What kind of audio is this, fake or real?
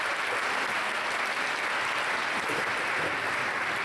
real